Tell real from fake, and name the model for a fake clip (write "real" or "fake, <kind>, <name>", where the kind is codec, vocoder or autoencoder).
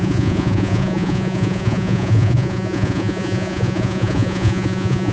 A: fake, vocoder, Vocos